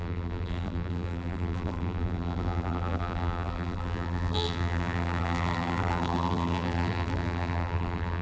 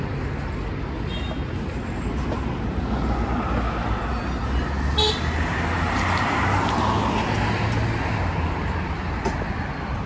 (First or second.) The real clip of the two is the second